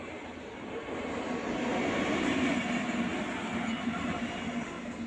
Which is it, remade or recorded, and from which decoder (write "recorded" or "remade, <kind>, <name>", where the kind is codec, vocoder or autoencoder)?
recorded